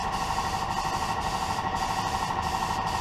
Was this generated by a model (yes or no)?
no